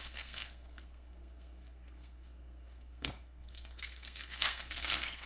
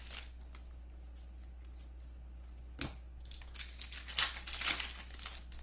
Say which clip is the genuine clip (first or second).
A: second